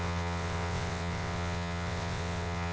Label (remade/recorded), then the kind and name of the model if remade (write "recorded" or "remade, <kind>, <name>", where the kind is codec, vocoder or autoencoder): remade, vocoder, WaveNeXt